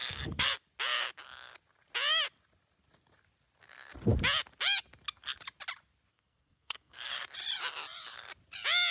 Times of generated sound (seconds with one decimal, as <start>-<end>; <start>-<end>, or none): 0.0-0.5; 6.1-7.1

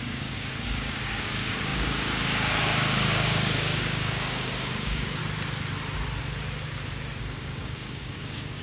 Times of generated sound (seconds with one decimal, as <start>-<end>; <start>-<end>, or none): 0.0-5.2; 7.2-8.6